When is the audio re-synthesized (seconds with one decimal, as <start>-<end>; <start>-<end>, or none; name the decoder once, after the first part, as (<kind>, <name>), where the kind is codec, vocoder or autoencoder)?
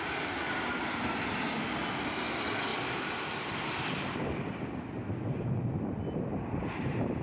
2.7-4.7 (vocoder, BigVGAN v2)